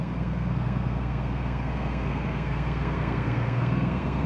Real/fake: fake